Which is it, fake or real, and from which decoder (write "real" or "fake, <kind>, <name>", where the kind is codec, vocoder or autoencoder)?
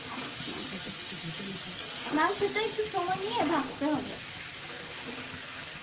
real